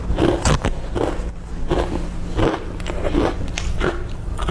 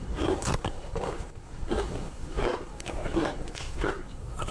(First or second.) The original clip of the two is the first